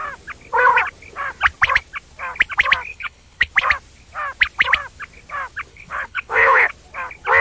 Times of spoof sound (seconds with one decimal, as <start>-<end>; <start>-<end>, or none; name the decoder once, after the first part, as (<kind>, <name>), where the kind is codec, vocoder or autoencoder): 2.9-3.5 (codec, HILCodec); 5.7-6.7